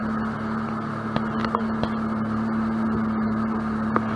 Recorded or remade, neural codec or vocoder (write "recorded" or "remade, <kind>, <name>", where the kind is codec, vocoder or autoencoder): recorded